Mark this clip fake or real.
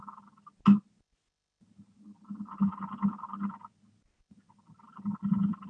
real